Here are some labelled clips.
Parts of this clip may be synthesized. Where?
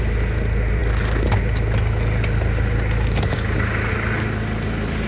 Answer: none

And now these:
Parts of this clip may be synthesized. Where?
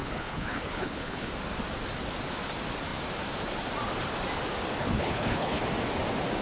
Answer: 0.0-1.3 (codec, HILCodec); 4.8-5.6